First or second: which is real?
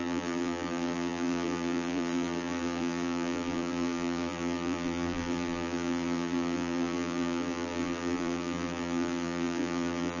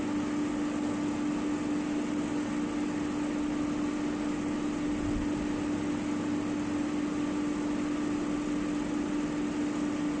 second